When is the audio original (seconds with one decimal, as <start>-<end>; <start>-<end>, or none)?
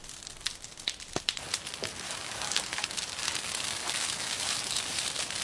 0.0-1.8; 5.0-5.4